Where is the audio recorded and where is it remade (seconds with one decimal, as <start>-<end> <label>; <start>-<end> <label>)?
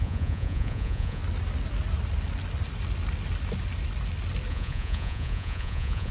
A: 0.0-1.2 remade; 1.2-4.5 recorded; 4.5-6.1 remade